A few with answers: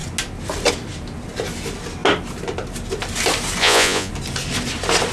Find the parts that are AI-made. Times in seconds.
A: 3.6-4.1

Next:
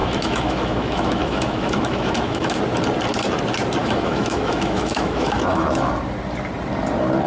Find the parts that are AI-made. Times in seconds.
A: 0.0-2.6; 3.8-5.9

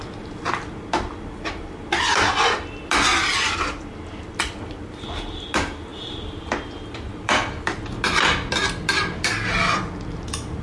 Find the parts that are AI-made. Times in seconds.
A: 3.1-5.5; 5.9-7.6

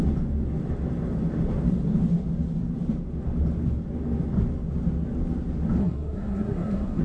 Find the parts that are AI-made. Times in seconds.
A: 5.8-7.0

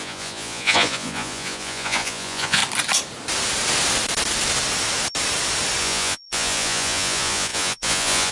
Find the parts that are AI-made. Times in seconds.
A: 0.0-2.6; 5.8-8.3

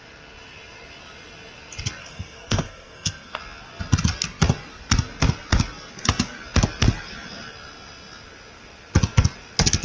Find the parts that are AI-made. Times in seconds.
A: 2.0-3.4

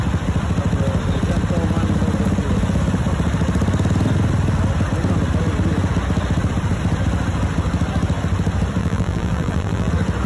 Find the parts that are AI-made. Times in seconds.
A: 8.8-9.9

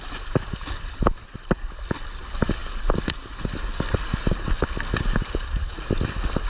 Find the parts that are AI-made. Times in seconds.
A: none